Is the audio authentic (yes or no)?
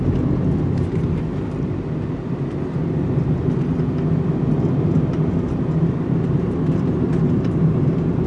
yes